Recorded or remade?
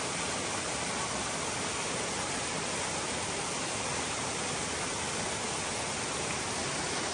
recorded